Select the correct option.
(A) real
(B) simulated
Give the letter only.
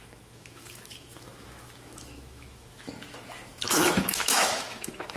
B